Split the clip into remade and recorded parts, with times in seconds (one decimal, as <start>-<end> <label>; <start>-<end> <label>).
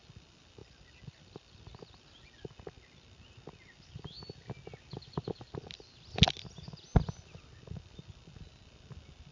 0.0-9.3 recorded